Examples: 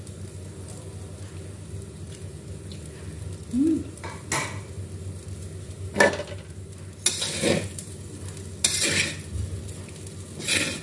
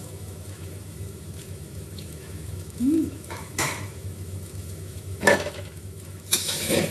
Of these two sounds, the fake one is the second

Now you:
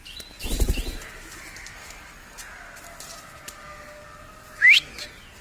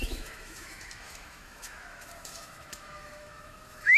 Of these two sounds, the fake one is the second